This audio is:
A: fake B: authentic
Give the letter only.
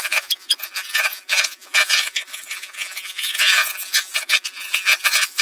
A